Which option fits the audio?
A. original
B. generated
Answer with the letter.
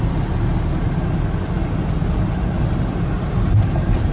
A